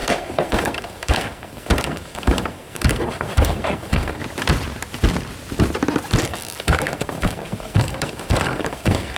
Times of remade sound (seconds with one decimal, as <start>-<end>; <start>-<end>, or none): 0.0-4.2; 6.2-9.2

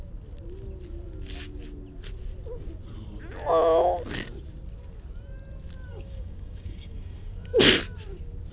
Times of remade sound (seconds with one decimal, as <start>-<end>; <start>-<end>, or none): 5.9-7.6